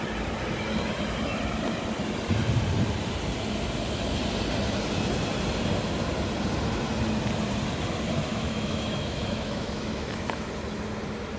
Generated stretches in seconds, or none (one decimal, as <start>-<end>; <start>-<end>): 8.3-10.5